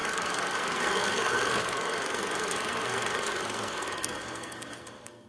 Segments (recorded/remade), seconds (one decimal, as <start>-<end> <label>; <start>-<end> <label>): 0.0-5.3 remade